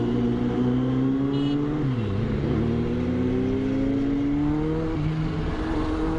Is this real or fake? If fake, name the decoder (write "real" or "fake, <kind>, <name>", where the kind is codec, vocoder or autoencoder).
real